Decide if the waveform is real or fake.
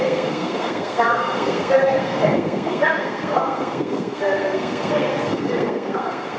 fake